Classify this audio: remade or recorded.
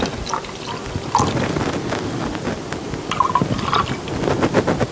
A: recorded